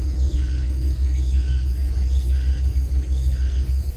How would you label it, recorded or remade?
remade